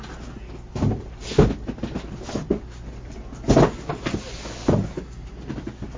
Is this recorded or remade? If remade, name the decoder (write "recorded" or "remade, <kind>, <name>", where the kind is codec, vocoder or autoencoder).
recorded